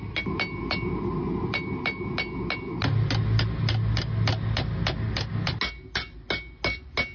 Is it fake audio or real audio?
real